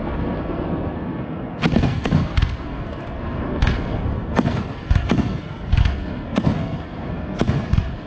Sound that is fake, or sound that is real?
fake